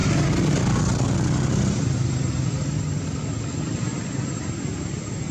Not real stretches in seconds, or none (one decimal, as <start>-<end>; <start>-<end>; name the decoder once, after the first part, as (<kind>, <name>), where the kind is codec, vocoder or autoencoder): 0.0-3.2 (vocoder, BigVGAN v2); 3.9-4.6